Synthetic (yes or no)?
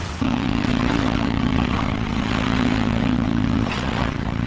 yes